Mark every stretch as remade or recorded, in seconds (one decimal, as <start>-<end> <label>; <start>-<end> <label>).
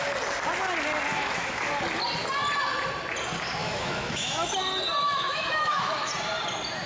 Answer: 0.0-1.1 recorded; 1.1-1.7 remade; 1.7-3.6 recorded; 3.6-4.5 remade; 4.5-5.0 recorded; 5.0-6.1 remade; 6.1-6.9 recorded